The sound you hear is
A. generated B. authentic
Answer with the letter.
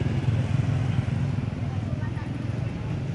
A